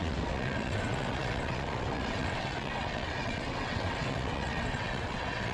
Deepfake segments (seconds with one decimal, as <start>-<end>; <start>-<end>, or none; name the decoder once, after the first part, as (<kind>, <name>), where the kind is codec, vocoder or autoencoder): 0.0-5.5 (vocoder, WaveNeXt)